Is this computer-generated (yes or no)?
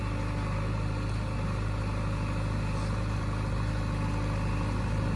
no